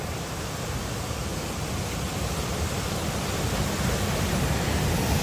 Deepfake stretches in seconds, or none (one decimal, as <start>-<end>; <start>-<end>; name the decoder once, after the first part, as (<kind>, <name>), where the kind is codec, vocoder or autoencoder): 1.3-4.4 (vocoder, BigVGAN v2)